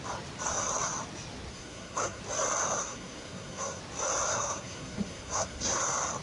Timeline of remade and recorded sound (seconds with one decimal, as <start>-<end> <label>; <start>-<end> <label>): 0.0-1.5 recorded; 1.5-2.2 remade; 2.2-2.8 recorded; 2.8-3.8 remade; 3.8-4.3 recorded; 4.3-5.8 remade; 5.8-6.2 recorded